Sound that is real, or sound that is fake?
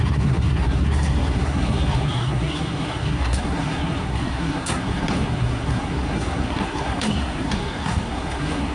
fake